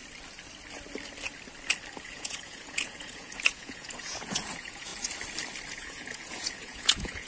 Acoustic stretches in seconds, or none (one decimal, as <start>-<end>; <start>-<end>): 0.0-2.0; 4.9-5.7

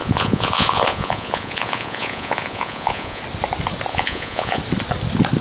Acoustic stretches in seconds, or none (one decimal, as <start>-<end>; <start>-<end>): 3.2-3.9; 4.6-5.4

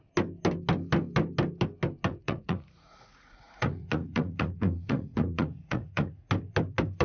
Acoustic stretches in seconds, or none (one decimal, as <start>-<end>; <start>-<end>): 0.0-2.1; 6.3-7.0

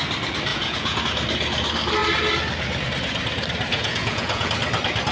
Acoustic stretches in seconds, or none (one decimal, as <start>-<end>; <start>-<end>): 0.0-0.5; 1.0-3.7; 4.5-5.1

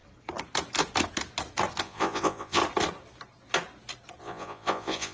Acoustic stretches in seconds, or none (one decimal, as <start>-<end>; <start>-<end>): 0.0-1.8; 2.6-4.2

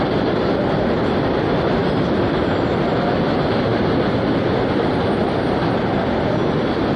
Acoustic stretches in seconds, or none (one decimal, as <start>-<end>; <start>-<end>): 0.0-7.0

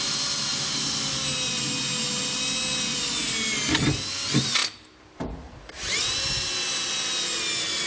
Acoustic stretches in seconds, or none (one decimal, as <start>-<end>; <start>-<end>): 0.0-7.9

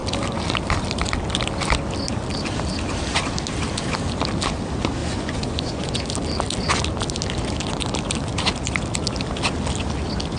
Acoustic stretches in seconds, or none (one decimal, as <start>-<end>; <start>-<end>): 0.0-5.0; 6.0-10.4